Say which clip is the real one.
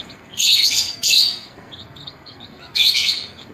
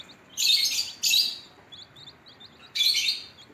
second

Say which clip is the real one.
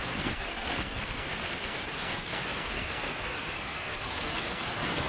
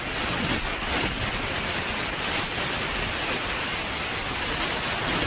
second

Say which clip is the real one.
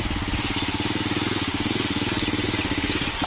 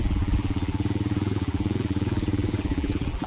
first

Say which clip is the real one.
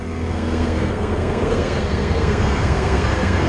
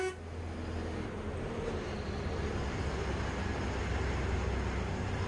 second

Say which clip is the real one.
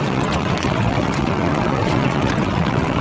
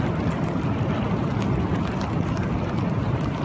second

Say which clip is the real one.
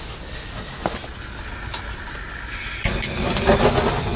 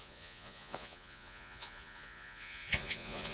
first